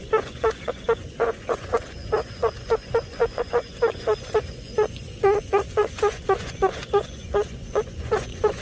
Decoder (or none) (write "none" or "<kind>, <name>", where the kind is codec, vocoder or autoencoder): vocoder, Vocos